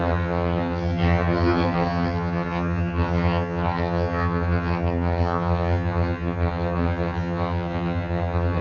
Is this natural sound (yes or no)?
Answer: no